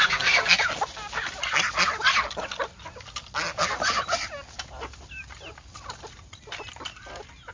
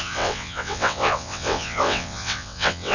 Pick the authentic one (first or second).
first